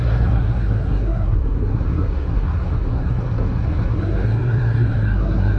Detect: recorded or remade remade